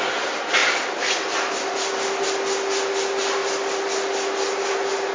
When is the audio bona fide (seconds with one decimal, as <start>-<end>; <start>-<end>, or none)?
0.0-5.1